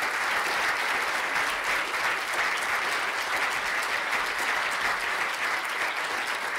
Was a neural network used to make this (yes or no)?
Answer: no